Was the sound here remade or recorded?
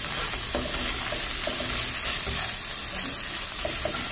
recorded